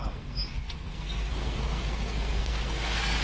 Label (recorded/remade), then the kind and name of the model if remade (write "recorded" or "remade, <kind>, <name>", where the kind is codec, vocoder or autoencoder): remade, codec, SNAC